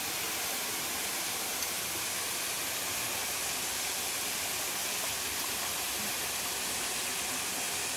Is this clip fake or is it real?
real